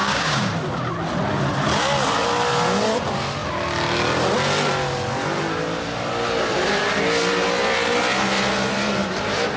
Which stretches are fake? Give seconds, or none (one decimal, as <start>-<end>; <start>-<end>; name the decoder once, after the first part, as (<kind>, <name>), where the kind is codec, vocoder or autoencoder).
0.0-0.5 (codec, DAC)